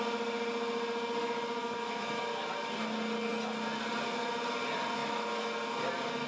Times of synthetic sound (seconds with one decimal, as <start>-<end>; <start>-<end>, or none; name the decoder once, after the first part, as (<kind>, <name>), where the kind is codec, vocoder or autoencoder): 1.6-2.2 (autoencoder, DAC-VAE); 5.0-5.5